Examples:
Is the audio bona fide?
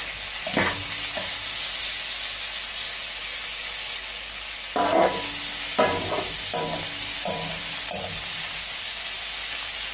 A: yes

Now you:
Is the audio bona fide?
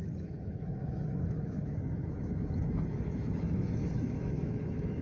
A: no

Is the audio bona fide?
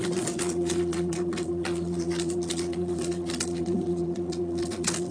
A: no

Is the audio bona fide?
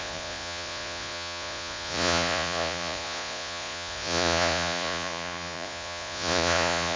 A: no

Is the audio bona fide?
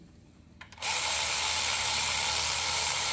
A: no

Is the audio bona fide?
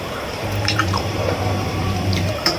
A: no